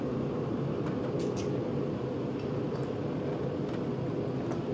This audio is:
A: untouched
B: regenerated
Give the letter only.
A